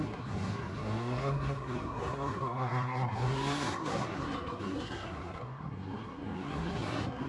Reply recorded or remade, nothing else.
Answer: remade